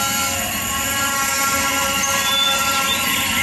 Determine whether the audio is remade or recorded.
remade